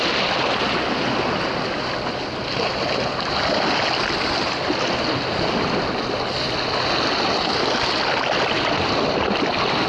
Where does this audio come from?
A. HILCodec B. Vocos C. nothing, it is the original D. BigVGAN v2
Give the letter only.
C